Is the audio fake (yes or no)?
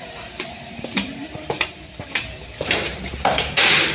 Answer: yes